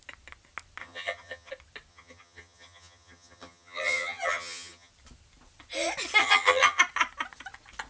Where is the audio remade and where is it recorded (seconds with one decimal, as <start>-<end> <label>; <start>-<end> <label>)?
0.0-0.8 recorded; 0.8-1.5 remade; 1.5-1.9 recorded; 1.9-4.9 remade; 4.9-6.2 recorded; 6.2-6.8 remade; 6.8-7.9 recorded